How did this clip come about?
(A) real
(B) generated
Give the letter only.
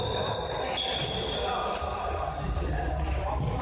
A